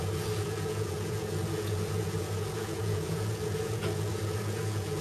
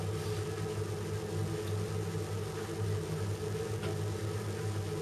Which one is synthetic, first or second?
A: first